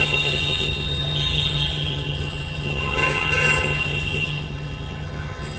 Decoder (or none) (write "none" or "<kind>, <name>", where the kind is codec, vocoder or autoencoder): vocoder, HiFi-GAN